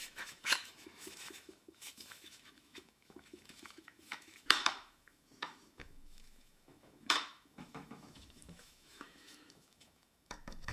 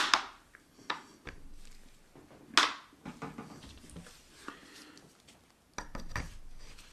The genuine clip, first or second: second